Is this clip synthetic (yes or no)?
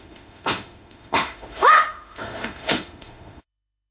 yes